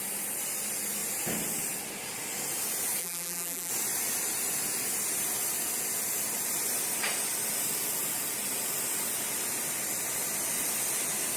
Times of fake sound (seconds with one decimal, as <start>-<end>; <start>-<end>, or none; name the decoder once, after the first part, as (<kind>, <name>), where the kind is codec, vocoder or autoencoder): 3.0-3.7 (vocoder, BigVGAN v2)

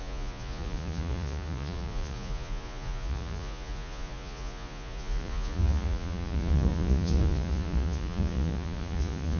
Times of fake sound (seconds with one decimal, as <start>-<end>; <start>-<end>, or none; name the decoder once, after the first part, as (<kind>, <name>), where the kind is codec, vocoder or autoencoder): 0.0-9.4 (vocoder, Vocos)

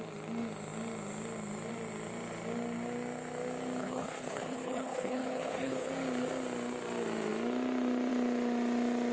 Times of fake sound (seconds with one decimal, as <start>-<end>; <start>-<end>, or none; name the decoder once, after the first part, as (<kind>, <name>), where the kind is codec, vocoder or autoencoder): 3.8-5.9 (codec, HILCodec)

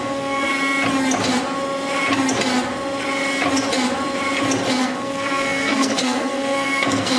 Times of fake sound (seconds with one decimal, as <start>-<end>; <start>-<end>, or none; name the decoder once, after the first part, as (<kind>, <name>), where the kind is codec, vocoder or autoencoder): 0.0-0.5 (codec, SNAC); 4.8-7.2

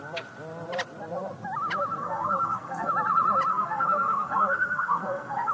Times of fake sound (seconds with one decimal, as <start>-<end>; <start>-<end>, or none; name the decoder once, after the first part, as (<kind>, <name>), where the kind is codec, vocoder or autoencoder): 2.0-2.9 (codec, SNAC); 3.5-5.5